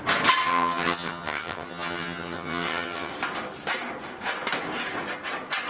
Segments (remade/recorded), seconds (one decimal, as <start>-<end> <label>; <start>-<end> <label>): 0.0-0.4 recorded; 0.4-3.1 remade; 3.1-5.7 recorded